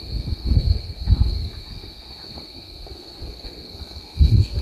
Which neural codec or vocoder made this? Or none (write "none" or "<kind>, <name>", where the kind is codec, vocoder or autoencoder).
codec, SNAC